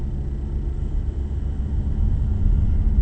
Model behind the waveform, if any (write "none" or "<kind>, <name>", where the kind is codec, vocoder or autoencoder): none